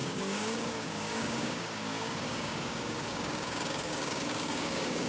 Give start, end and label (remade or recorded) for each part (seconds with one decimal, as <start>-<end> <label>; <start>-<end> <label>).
0.0-5.1 remade